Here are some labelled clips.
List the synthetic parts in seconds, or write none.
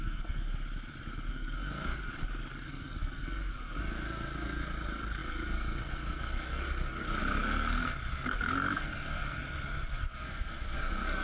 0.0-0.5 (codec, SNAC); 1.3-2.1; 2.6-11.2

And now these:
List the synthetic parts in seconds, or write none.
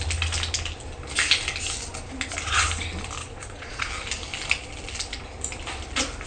3.2-3.9 (vocoder, Vocos)